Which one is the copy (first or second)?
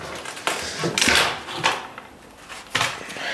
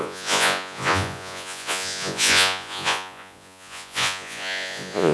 second